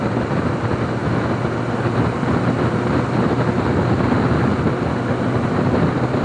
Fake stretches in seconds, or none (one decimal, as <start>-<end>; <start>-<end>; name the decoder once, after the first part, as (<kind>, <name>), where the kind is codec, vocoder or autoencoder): none